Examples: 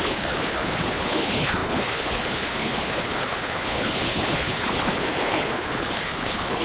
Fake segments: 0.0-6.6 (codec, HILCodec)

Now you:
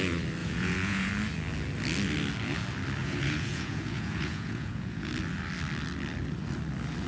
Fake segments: 0.4-1.1 (vocoder, Vocos); 3.0-5.1

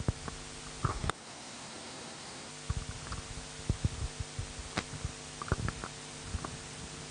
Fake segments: 0.9-2.5 (codec, SNAC)

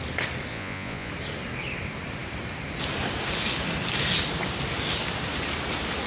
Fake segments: 0.5-1.1 (vocoder, Vocos)